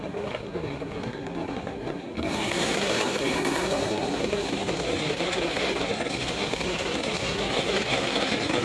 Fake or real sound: fake